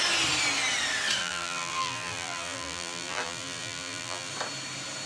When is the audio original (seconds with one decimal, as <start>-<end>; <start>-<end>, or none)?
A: 0.0-1.2; 4.3-5.1